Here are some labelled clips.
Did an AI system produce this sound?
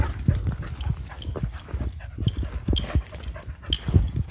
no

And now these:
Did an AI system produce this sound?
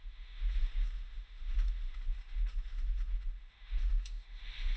yes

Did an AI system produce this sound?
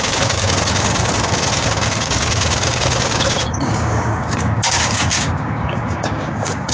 yes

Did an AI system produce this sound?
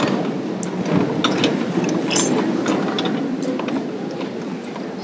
no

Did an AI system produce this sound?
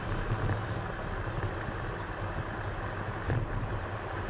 no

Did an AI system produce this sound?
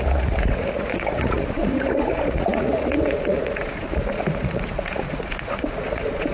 yes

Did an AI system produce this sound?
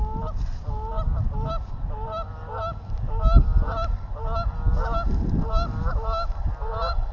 no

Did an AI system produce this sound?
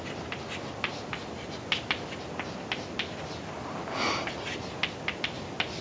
no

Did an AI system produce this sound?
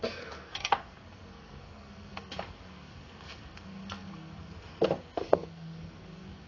yes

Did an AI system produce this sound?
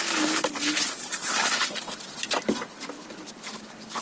no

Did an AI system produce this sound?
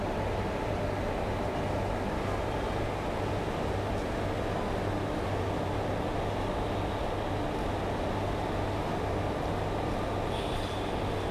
no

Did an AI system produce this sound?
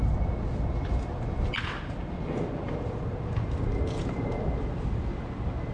no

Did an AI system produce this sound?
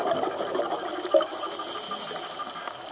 no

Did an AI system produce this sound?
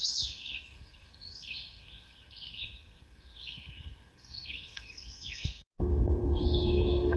yes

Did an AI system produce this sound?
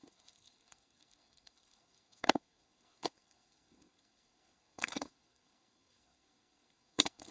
yes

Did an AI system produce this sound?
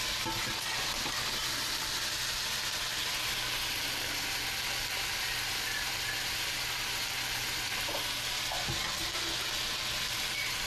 no